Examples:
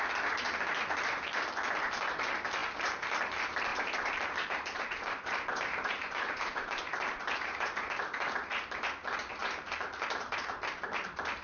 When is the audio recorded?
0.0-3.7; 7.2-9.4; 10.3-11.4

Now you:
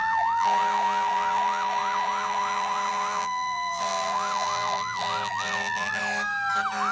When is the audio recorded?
6.0-6.9

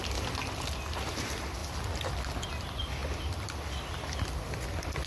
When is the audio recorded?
0.0-5.1

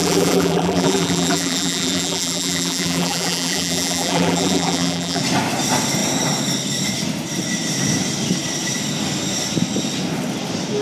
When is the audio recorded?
5.2-10.8